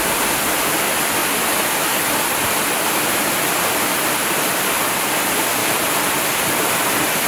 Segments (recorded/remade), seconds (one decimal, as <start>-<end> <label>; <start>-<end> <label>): 0.0-7.3 recorded